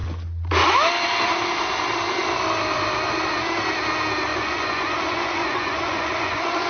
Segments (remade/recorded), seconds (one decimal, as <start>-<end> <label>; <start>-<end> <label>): 0.0-4.3 recorded; 4.3-6.7 remade